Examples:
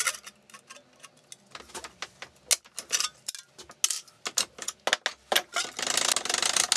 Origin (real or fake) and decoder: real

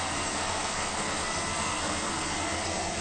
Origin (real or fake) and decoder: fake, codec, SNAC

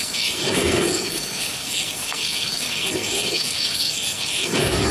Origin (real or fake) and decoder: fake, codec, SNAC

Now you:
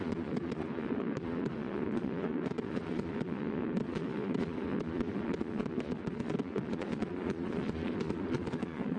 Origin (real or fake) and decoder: fake, vocoder, Vocos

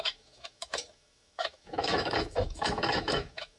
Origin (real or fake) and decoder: fake, autoencoder, DAC-VAE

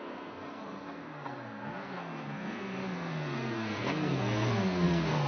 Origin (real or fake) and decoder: fake, codec, SNAC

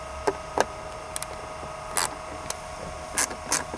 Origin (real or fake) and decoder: real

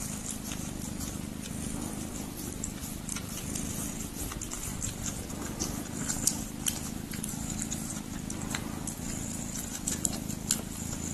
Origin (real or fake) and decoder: real